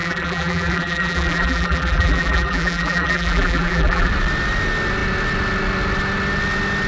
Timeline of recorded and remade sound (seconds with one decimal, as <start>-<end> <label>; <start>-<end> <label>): 0.0-4.1 remade; 4.1-6.9 recorded